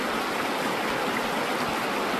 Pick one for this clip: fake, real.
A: real